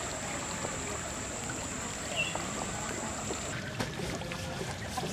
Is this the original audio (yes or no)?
yes